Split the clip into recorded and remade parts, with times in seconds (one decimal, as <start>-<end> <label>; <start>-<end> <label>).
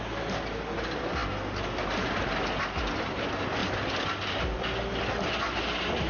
0.0-6.1 recorded